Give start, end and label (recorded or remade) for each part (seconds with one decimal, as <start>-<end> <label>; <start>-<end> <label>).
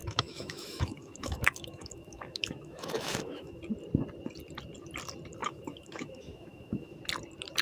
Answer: 0.0-3.6 remade; 3.6-5.4 recorded; 5.4-7.0 remade; 7.0-7.6 recorded